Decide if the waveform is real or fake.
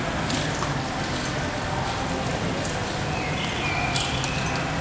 real